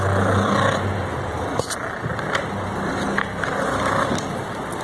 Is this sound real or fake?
real